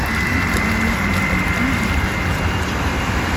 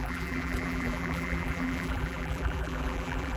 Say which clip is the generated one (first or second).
second